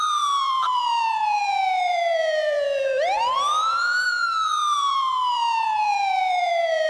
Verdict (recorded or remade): remade